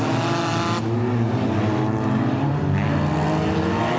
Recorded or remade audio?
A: recorded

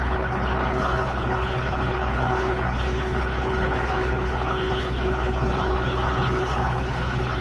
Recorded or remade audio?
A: remade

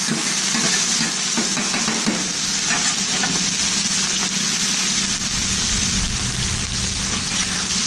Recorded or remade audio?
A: recorded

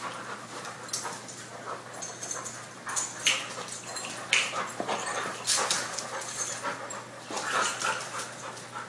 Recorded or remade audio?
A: recorded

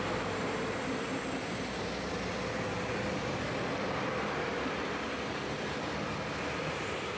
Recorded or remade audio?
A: recorded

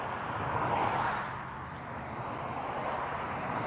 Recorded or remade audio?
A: recorded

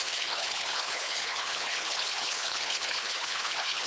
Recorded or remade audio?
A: remade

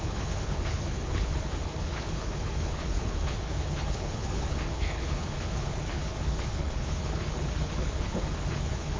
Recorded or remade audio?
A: remade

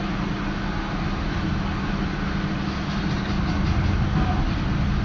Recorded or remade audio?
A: recorded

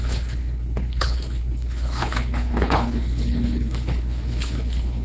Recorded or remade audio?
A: remade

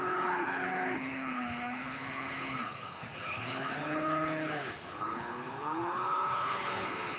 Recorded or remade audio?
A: remade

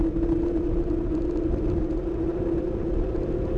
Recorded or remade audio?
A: recorded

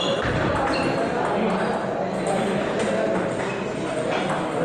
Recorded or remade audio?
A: recorded